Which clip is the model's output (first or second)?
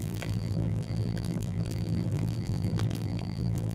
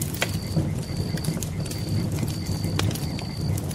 first